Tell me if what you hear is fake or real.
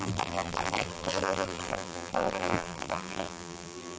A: fake